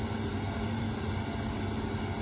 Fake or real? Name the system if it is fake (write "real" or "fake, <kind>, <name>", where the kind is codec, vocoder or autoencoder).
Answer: real